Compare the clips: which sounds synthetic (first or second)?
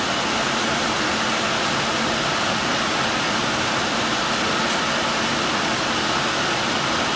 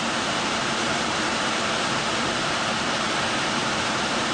second